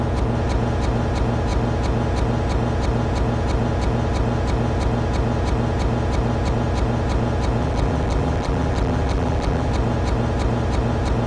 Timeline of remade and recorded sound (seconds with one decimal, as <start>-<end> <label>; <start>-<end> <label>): 0.0-7.6 recorded; 7.6-9.7 remade; 9.7-11.3 recorded